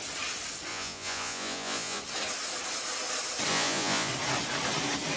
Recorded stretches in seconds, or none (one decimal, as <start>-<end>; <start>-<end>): 0.0-0.7; 2.0-3.5; 4.1-5.2